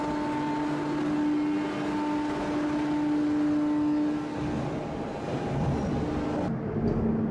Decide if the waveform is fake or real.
real